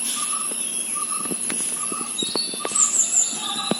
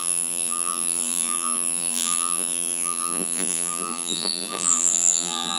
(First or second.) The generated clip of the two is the second